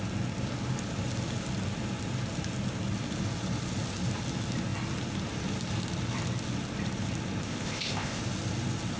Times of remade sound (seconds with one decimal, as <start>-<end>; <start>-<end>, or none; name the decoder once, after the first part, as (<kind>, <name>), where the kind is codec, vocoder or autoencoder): 7.4-8.2 (codec, ZipCodec)